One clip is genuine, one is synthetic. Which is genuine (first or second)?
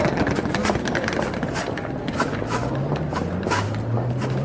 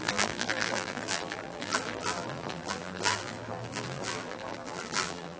first